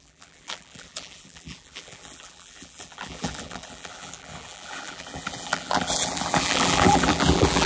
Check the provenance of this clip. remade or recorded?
remade